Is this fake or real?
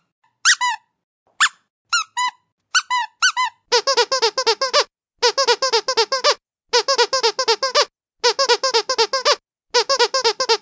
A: real